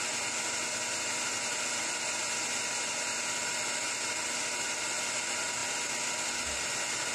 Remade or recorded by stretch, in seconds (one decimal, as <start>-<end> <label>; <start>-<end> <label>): 0.0-7.1 recorded